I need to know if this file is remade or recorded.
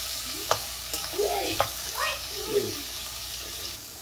remade